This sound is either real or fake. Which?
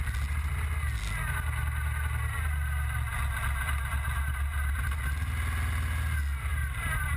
real